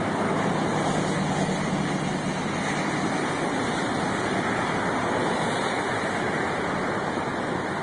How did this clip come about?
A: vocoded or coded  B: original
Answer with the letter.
B